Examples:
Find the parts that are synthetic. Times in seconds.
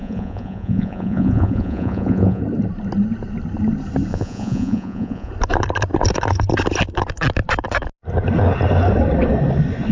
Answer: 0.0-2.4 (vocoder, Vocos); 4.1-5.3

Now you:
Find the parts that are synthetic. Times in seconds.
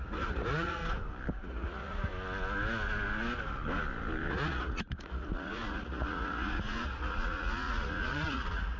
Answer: 0.0-0.8 (vocoder, Vocos); 1.3-2.1; 4.3-8.8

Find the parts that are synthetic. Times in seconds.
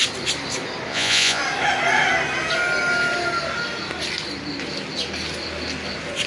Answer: 0.9-1.4 (vocoder, Vocos)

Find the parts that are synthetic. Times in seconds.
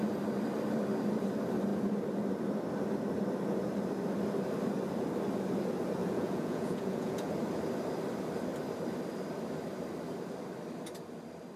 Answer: 6.0-7.3 (vocoder, Vocos)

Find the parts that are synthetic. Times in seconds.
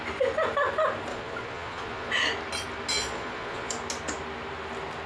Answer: 1.1-2.1 (vocoder, Vocos); 2.9-3.7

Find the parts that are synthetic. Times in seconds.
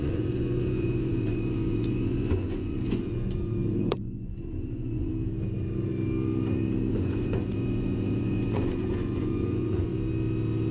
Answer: 0.0-5.1 (vocoder, Vocos); 6.9-9.9